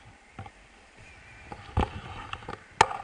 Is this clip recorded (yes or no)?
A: yes